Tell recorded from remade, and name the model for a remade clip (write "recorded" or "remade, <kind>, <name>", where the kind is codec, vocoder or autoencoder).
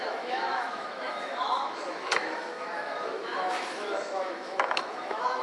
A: remade, autoencoder, DAC-VAE